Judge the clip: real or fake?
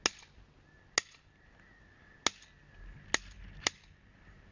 real